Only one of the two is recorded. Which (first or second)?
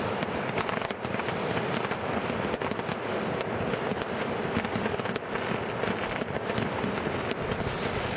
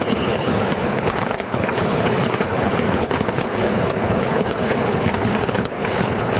first